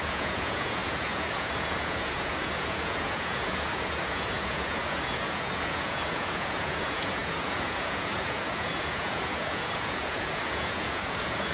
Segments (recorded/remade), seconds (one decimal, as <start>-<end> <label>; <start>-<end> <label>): 0.0-11.5 remade

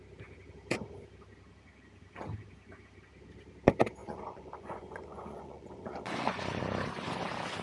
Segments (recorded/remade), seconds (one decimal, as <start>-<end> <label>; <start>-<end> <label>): 0.0-4.0 recorded; 4.0-6.6 remade; 6.6-7.6 recorded

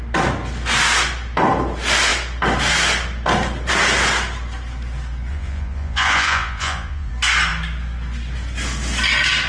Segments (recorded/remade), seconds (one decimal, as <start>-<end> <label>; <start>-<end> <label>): 0.0-5.3 recorded; 5.3-7.1 remade; 7.1-9.5 recorded

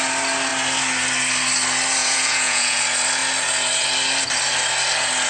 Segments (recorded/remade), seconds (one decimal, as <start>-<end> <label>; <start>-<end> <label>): 0.0-2.0 recorded; 2.0-2.8 remade; 2.8-5.3 recorded

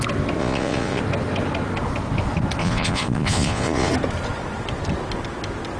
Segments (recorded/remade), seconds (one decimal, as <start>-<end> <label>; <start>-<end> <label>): 0.0-0.4 recorded; 0.4-1.0 remade; 1.0-2.6 recorded; 2.6-3.9 remade; 3.9-5.8 recorded

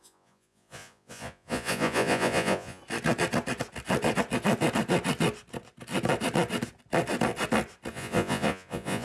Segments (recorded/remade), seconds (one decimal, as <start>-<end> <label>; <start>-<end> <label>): 0.0-2.8 remade; 2.8-7.9 recorded; 7.9-9.0 remade

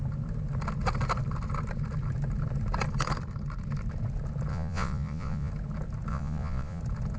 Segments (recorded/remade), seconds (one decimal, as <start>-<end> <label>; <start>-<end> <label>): 0.0-4.5 recorded; 4.5-5.5 remade; 5.5-6.1 recorded; 6.1-6.8 remade; 6.8-7.2 recorded